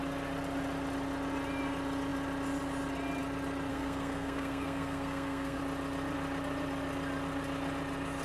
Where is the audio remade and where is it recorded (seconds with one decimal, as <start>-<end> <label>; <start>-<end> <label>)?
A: 0.0-3.7 recorded; 3.7-5.6 remade; 5.6-8.2 recorded